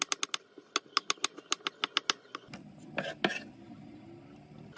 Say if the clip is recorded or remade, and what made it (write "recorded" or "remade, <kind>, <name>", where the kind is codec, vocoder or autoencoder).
recorded